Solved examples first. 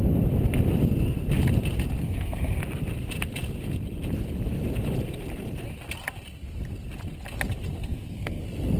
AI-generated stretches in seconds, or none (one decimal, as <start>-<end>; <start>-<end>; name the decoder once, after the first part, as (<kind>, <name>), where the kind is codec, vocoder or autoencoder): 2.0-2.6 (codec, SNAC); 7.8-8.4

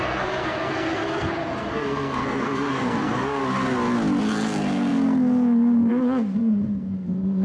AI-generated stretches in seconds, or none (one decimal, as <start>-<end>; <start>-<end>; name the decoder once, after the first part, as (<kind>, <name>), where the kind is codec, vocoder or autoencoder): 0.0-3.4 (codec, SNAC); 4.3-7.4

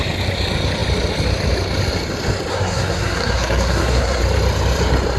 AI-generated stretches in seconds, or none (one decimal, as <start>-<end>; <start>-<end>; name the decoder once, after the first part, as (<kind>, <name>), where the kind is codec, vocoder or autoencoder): 2.5-4.2 (codec, SNAC)